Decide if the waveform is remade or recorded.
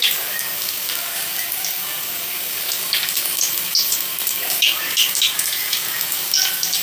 remade